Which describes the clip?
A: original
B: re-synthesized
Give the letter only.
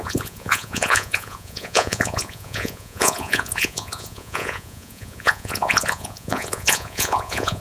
B